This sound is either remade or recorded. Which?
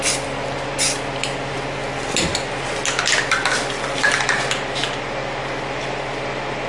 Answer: recorded